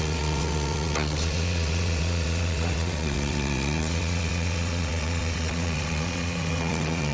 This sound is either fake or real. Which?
fake